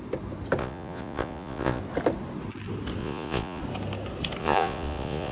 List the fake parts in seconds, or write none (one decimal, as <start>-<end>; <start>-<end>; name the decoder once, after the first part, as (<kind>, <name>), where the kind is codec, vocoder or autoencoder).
0.6-1.8 (vocoder, Vocos); 3.0-3.6; 4.4-5.3